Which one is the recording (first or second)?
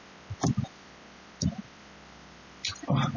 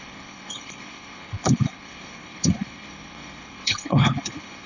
first